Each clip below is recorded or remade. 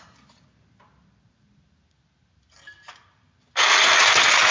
recorded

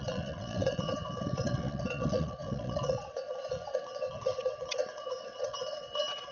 remade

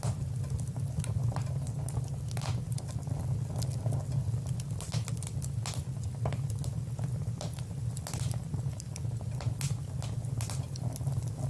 recorded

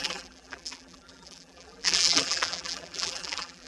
remade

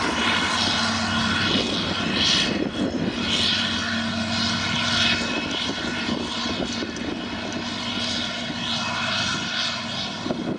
recorded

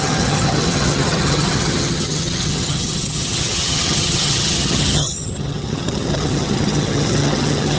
remade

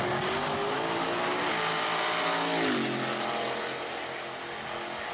recorded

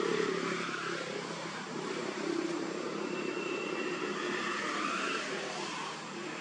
remade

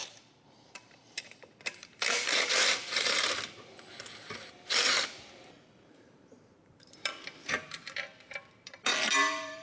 remade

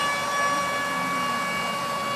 recorded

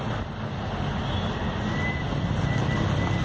recorded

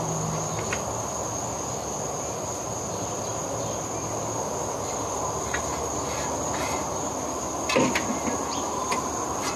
recorded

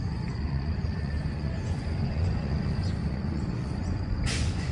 remade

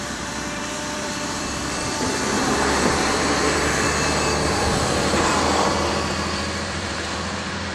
remade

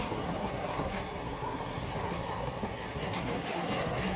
remade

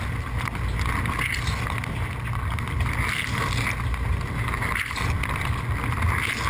recorded